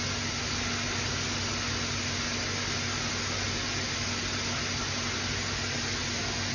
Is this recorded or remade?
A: recorded